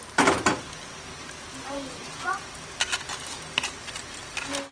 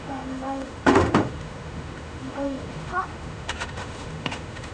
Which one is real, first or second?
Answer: first